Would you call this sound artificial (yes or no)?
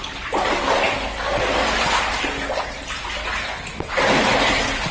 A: no